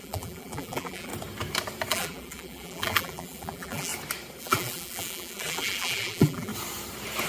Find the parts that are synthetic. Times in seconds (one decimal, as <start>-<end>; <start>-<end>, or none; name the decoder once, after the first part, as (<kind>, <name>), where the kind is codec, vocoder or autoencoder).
0.0-1.1 (vocoder, BigVGAN v2); 1.9-3.9; 4.4-6.5

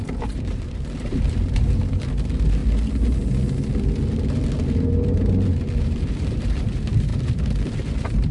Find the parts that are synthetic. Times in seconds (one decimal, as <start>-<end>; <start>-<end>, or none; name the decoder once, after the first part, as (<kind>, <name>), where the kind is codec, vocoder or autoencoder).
0.0-2.6 (vocoder, BigVGAN v2); 5.8-8.3

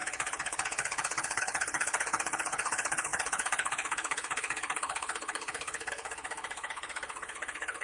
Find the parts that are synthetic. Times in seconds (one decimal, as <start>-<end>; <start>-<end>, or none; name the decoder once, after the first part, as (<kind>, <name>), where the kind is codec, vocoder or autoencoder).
0.0-7.8 (codec, HILCodec)

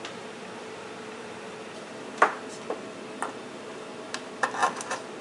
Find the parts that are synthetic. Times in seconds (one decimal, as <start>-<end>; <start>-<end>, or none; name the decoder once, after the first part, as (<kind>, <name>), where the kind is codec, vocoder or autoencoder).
0.4-3.3 (vocoder, BigVGAN v2); 4.6-5.2

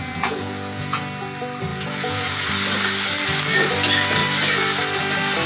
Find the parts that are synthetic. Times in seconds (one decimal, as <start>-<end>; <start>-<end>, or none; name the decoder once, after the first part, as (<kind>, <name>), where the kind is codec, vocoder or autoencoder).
0.0-1.0 (vocoder, Vocos); 1.7-2.5